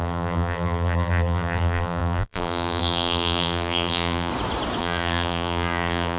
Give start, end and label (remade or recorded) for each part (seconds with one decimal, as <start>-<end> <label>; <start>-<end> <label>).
0.0-4.3 remade; 4.3-4.8 recorded; 4.8-6.2 remade